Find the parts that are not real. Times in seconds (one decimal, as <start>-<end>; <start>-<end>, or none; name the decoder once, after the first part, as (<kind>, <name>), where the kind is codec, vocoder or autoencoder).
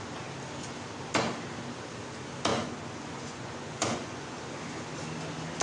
2.5-4.4 (vocoder, Vocos)